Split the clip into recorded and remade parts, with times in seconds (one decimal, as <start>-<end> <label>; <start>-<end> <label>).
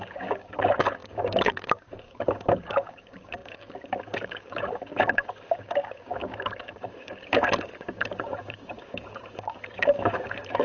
0.0-10.6 remade